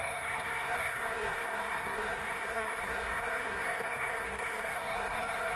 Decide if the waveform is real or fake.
fake